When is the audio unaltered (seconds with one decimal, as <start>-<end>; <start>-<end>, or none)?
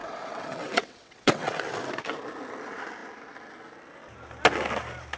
1.6-5.2